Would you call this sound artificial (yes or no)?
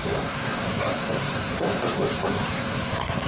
yes